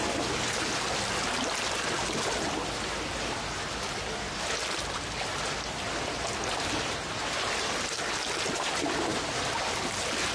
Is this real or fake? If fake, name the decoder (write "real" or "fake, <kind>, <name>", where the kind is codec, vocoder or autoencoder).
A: real